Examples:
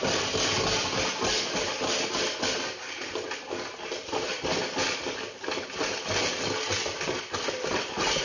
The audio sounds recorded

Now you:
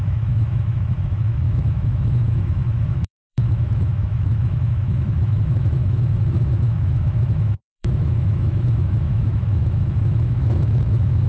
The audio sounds remade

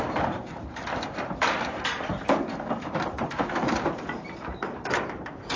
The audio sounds remade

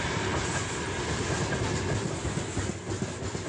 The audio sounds recorded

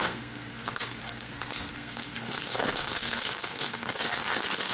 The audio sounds remade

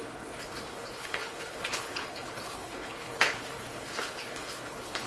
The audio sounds remade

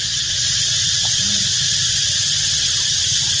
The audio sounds recorded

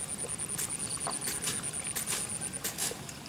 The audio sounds recorded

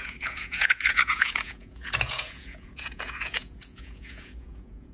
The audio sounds remade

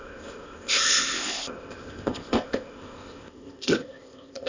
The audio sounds remade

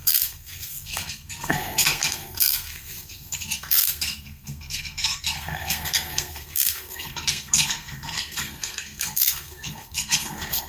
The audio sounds remade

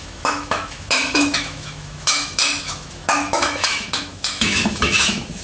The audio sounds remade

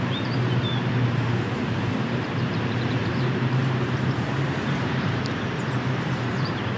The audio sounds remade